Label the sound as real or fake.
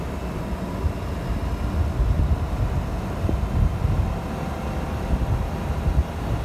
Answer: real